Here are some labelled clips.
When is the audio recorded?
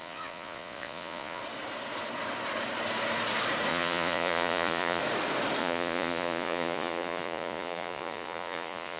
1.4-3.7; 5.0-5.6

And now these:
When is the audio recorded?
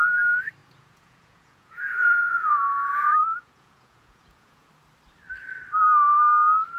0.0-0.6; 4.7-6.8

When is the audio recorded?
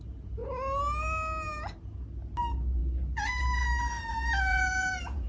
0.0-4.5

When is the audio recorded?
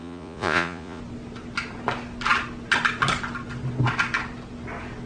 1.0-5.1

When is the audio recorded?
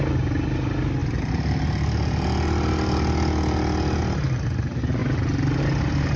0.0-6.2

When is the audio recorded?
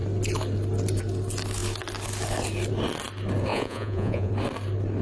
0.0-3.5; 4.3-5.0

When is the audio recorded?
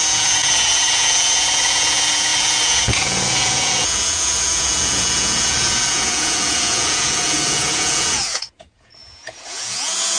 none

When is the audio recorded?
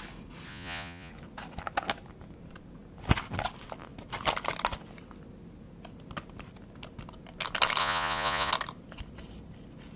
0.0-0.5; 1.1-7.8; 8.5-10.0